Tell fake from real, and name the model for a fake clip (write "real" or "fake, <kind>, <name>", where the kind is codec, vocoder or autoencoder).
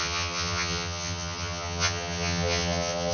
fake, vocoder, HiFi-GAN